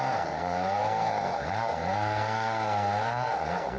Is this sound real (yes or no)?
no